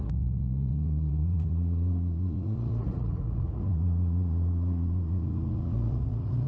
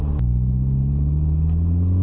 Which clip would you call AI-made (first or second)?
first